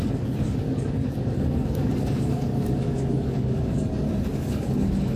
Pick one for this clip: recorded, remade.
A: remade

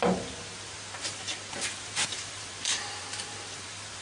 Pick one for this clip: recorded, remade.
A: remade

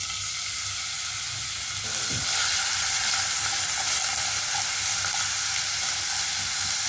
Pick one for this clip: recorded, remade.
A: recorded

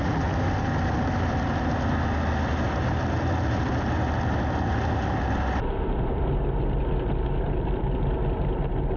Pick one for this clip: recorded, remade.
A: recorded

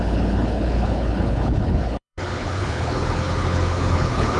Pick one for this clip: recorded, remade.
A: remade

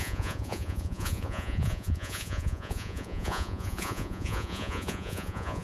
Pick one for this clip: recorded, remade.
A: remade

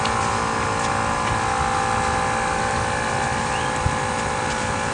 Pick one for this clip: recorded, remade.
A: recorded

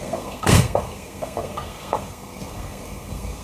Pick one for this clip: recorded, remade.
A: remade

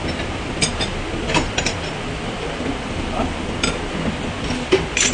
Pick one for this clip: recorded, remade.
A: recorded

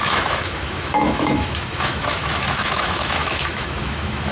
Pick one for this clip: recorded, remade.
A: remade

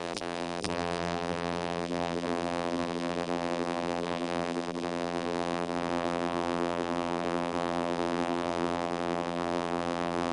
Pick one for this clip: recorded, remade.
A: remade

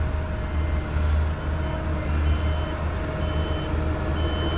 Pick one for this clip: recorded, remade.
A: recorded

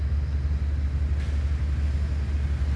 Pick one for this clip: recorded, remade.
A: recorded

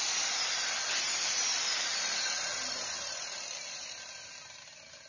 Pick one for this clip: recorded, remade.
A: recorded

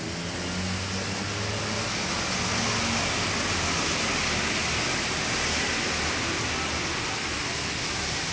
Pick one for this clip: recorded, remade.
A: recorded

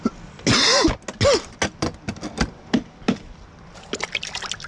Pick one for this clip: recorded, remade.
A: recorded